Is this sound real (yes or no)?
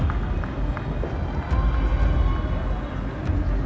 yes